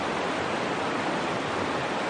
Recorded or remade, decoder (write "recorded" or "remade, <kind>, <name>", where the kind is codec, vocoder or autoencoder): recorded